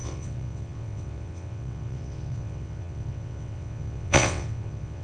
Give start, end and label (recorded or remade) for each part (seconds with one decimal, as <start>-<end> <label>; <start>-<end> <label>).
0.0-5.0 remade